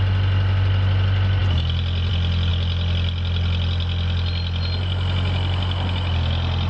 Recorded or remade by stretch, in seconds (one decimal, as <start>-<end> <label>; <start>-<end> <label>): 0.0-6.7 recorded